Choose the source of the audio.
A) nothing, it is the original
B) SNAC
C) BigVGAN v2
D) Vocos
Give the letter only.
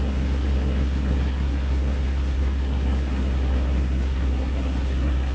B